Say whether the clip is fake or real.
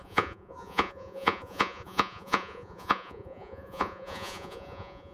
fake